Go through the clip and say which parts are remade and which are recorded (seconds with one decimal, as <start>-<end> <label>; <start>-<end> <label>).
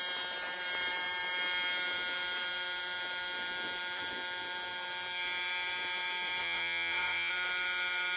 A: 0.0-6.4 recorded; 6.4-7.3 remade; 7.3-8.2 recorded